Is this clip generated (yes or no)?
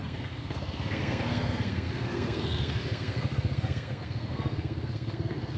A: yes